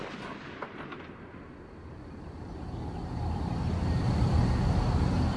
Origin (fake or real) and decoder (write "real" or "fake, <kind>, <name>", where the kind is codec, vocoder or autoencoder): real